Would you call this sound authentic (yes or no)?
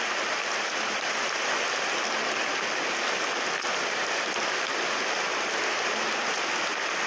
yes